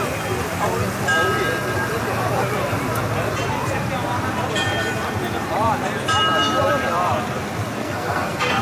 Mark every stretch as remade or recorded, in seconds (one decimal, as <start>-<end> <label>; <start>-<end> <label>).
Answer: 0.0-7.8 recorded; 7.8-8.6 remade